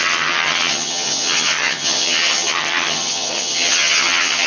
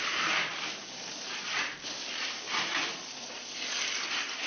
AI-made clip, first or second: first